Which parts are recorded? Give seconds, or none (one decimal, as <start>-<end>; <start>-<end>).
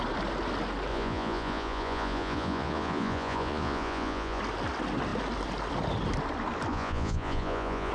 0.0-0.9; 4.4-6.7